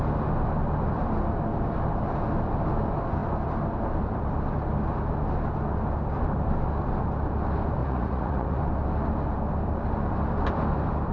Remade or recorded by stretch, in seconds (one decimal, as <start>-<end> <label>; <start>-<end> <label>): 0.0-7.8 recorded; 7.8-8.6 remade; 8.6-11.1 recorded